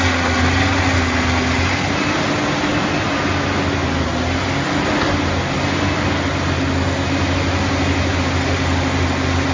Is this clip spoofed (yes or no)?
no